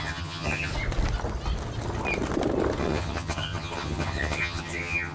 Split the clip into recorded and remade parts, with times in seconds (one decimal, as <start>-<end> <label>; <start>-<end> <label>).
0.0-0.7 remade; 0.7-2.8 recorded; 2.8-5.1 remade